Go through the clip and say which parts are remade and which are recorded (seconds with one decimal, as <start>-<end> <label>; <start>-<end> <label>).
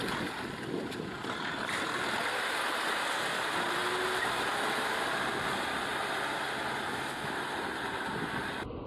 0.0-8.9 recorded